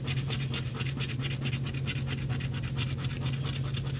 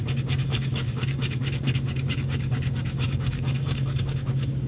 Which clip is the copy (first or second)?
second